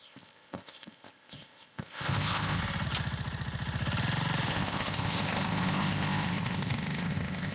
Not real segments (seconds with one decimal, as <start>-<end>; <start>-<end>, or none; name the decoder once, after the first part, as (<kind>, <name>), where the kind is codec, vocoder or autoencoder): 0.0-2.6 (codec, ZipCodec); 4.5-7.5